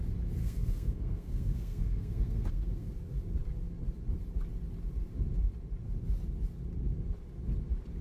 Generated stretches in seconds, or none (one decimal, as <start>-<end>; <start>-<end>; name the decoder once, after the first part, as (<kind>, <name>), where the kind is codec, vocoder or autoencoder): 0.4-2.9 (codec, SNAC)